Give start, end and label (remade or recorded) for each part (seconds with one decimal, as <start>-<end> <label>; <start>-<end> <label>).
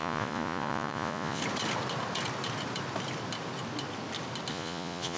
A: 0.0-1.4 remade; 1.4-4.5 recorded; 4.5-5.2 remade